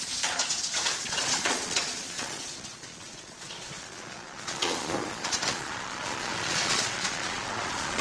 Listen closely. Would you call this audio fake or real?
fake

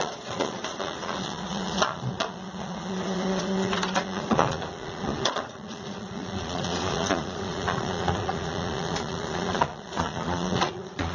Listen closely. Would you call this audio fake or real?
fake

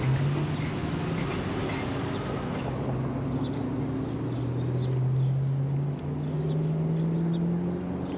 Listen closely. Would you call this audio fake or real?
real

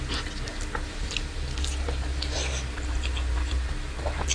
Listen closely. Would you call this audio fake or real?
real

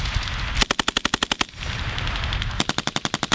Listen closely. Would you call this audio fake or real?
real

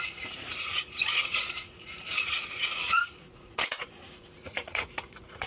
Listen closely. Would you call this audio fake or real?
fake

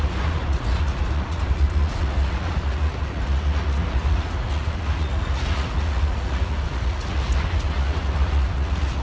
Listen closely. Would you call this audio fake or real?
fake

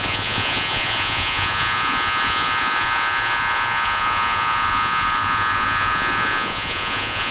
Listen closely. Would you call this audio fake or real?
fake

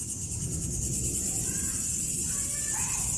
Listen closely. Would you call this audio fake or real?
real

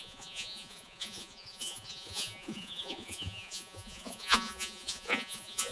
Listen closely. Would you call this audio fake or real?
fake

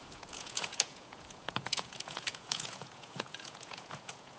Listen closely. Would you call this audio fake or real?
fake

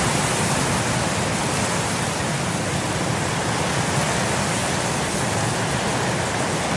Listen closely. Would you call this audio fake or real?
real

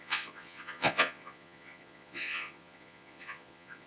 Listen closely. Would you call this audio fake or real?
fake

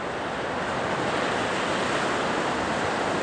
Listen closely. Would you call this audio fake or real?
real